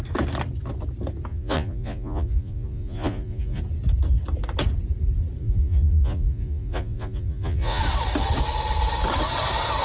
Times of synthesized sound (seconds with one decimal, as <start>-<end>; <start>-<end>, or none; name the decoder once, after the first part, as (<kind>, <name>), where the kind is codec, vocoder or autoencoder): 1.3-3.6 (vocoder, Vocos); 5.4-7.8